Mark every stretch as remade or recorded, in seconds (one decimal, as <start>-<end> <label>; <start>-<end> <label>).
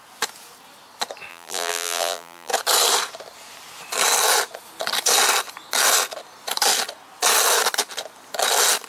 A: 0.0-1.3 recorded; 1.3-2.5 remade; 2.5-8.9 recorded